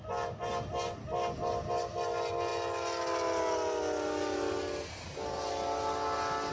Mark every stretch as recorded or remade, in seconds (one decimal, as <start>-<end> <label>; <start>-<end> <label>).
0.0-6.5 recorded